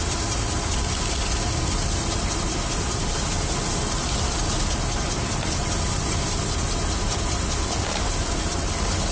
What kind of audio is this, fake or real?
real